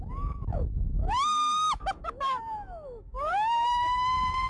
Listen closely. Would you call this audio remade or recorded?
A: remade